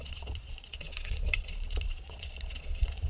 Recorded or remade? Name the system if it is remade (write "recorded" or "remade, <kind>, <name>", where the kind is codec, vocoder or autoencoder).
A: remade, vocoder, Vocos